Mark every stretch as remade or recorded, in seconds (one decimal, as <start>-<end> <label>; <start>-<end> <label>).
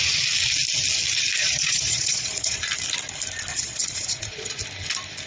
0.0-1.4 recorded; 1.4-2.6 remade; 2.6-3.5 recorded; 3.5-4.6 remade; 4.6-5.3 recorded